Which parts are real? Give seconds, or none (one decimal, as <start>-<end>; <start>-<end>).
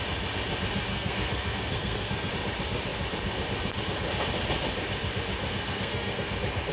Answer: 0.0-0.9; 2.3-5.4; 6.3-6.7